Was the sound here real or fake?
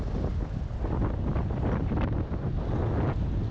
real